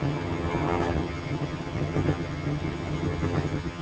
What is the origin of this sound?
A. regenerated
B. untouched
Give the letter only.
A